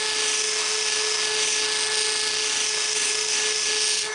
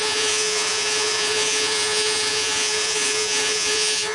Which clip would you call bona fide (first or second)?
first